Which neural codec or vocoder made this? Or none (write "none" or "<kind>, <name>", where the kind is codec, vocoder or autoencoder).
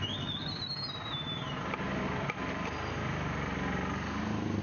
none